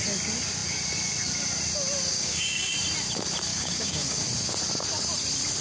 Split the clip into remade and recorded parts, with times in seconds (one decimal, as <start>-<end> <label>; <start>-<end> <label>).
0.0-2.1 recorded; 2.1-2.7 remade; 2.7-3.5 recorded; 3.5-4.2 remade; 4.2-5.6 recorded